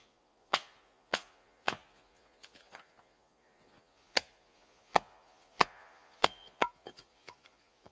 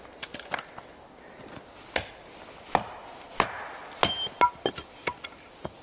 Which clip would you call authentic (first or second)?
second